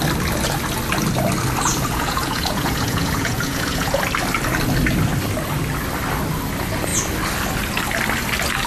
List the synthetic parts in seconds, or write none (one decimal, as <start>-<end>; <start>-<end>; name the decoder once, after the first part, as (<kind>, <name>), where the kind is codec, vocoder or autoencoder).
1.7-4.0 (vocoder, Vocos)

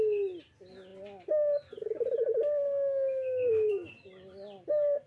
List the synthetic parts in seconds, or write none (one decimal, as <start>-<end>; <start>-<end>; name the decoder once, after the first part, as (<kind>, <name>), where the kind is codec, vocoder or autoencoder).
none